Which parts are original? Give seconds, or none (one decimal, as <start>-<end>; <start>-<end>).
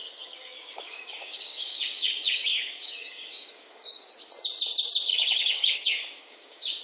4.1-5.1